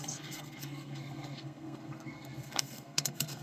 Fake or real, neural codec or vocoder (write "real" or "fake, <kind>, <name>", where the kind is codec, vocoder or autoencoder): fake, codec, SNAC